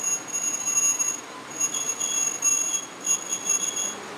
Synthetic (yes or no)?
no